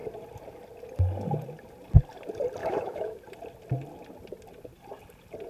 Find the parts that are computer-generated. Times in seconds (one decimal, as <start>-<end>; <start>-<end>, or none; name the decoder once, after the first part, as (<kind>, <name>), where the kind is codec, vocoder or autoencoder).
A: 2.6-3.2 (autoencoder, DAC-VAE)